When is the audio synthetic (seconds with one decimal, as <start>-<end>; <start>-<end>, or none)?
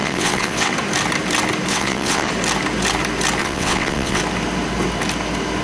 0.0-0.7; 1.7-2.3; 3.4-4.2